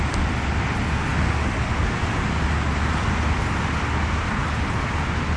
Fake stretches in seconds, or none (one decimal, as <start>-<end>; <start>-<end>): none